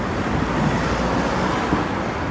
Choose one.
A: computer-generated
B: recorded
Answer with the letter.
B